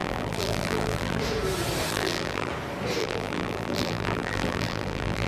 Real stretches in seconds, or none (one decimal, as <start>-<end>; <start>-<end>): 1.2-1.9; 2.5-3.0

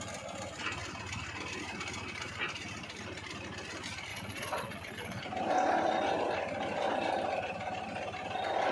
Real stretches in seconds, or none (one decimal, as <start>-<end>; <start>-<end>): 0.0-4.1; 5.2-8.7

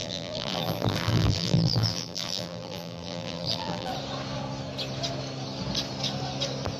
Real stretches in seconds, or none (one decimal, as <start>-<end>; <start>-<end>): 3.9-6.8

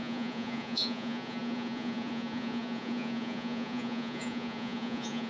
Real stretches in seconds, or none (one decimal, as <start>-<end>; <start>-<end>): none

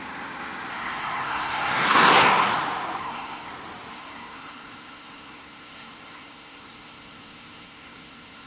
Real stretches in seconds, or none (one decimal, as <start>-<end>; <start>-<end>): 0.0-0.7; 2.2-3.0; 3.5-3.9

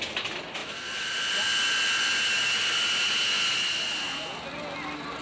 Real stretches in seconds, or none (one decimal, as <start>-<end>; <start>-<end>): 0.0-5.2

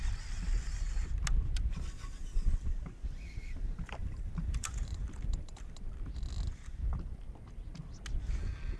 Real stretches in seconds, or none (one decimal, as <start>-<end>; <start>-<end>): 0.0-4.0; 5.7-8.8